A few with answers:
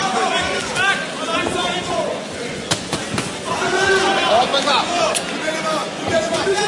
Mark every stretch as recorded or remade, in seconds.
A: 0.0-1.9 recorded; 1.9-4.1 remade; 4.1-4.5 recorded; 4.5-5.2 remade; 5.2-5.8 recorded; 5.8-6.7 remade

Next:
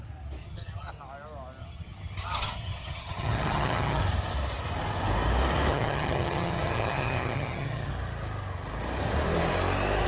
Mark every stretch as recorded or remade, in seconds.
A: 0.0-0.4 recorded; 0.4-0.9 remade; 0.9-1.6 recorded; 1.6-4.0 remade; 4.0-5.7 recorded; 5.7-7.9 remade; 7.9-10.1 recorded

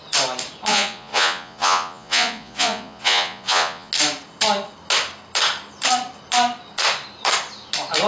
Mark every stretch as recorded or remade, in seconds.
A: 0.0-0.7 recorded; 0.7-3.9 remade; 3.9-8.1 recorded